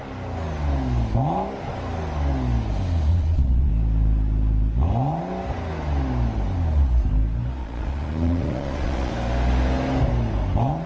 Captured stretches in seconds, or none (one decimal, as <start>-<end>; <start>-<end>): 0.0-3.1; 3.7-7.6; 9.1-10.9